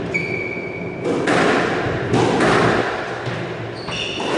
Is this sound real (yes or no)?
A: yes